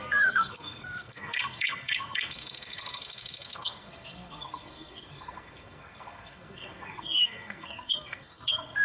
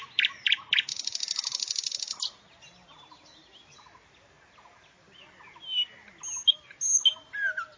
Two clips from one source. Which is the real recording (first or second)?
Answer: second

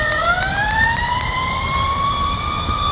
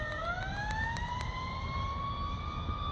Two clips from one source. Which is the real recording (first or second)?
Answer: second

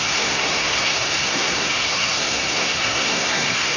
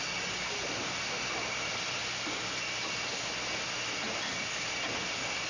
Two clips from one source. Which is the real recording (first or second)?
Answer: second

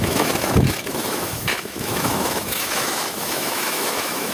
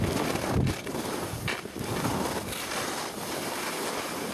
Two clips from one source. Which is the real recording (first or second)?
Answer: second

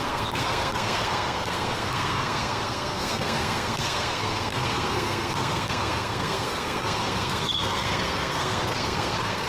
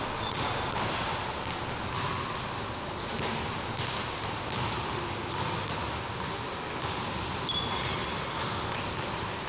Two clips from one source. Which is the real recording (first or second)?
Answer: second